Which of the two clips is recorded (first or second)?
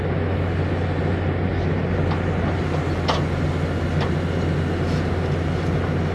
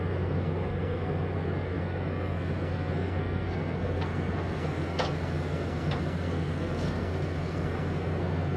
first